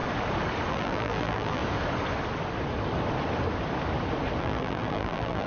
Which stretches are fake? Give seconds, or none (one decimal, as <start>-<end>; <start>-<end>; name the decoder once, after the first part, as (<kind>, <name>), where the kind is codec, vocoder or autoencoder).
0.7-1.6 (vocoder, BigVGAN v2); 4.4-5.5